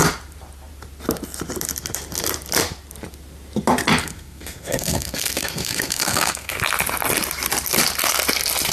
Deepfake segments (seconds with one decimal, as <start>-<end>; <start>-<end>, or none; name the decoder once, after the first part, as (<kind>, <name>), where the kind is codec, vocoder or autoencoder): 4.0-6.6 (codec, SNAC)